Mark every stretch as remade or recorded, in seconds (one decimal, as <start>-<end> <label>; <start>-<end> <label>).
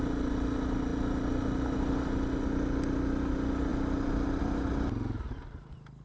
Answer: 0.0-3.7 recorded; 3.7-4.4 remade; 4.4-6.0 recorded